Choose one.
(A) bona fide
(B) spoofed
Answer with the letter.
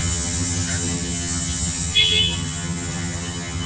B